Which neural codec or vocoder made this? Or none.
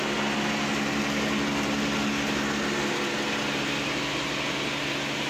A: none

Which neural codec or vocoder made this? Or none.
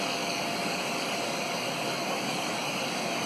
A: codec, DAC